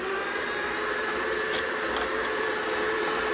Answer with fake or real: fake